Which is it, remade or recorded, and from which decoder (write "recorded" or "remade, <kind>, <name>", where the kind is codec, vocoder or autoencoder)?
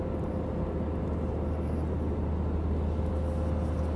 recorded